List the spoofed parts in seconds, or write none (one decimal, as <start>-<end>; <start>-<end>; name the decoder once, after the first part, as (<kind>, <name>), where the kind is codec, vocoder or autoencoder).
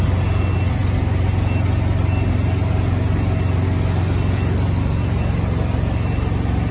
none